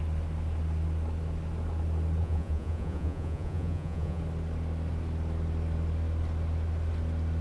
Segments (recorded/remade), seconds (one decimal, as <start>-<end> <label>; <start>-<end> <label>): 0.0-2.2 recorded; 2.2-4.2 remade; 4.2-7.4 recorded